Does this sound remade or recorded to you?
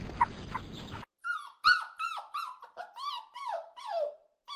recorded